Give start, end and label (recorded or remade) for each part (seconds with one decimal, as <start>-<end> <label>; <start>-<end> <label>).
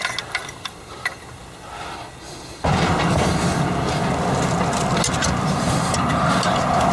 0.0-6.9 recorded